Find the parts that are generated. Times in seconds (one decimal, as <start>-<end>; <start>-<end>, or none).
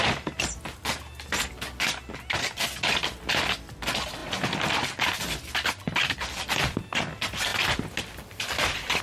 none